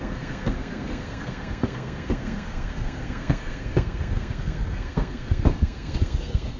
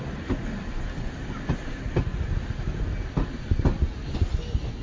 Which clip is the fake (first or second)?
first